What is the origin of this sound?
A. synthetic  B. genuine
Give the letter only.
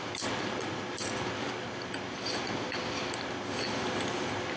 B